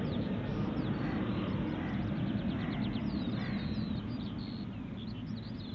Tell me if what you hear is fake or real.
real